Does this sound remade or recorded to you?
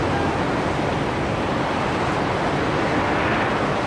recorded